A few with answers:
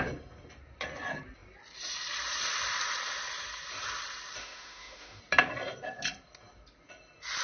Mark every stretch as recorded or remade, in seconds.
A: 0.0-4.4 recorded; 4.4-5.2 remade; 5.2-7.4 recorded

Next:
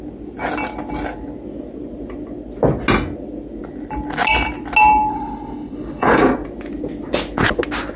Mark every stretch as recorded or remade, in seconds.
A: 0.0-5.1 recorded; 5.1-6.2 remade; 6.2-8.0 recorded

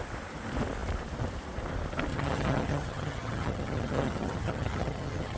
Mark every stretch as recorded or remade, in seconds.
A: 0.0-2.1 recorded; 2.1-5.4 remade

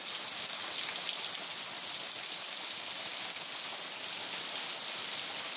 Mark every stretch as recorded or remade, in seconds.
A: 0.0-5.6 recorded

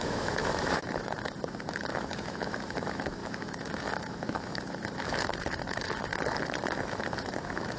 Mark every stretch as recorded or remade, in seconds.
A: 0.0-6.1 remade; 6.1-6.8 recorded; 6.8-7.8 remade

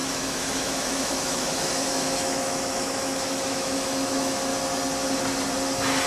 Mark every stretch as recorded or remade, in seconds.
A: 0.0-4.5 remade; 4.5-6.1 recorded

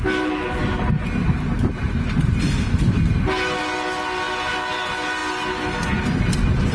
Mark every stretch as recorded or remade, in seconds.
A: 0.0-6.7 recorded

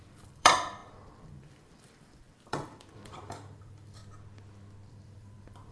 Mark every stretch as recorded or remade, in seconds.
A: 0.0-4.0 remade; 4.0-4.9 recorded; 4.9-5.7 remade